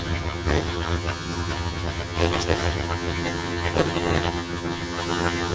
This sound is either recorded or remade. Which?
remade